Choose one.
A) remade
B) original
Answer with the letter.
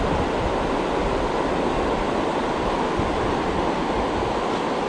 B